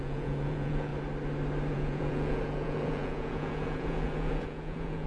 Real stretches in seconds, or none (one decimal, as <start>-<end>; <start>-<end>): 0.9-1.7